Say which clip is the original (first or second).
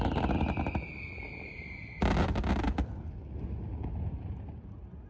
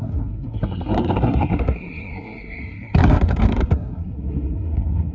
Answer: first